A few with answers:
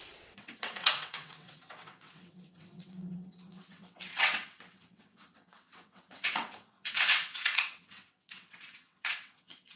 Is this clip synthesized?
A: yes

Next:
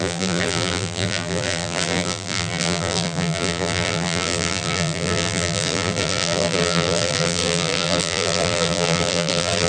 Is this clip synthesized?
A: yes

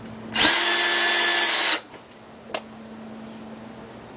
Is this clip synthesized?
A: no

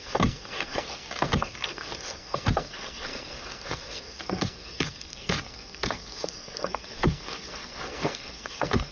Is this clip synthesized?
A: yes